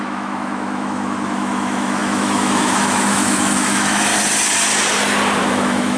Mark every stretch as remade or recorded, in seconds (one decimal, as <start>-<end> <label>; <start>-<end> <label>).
0.0-4.1 remade; 4.1-5.4 recorded; 5.4-6.0 remade